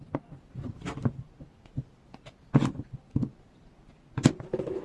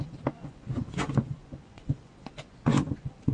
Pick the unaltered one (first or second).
first